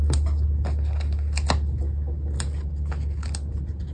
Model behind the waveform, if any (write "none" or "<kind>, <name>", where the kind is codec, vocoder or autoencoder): none